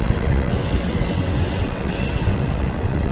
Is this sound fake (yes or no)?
yes